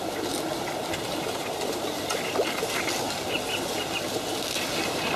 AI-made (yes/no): no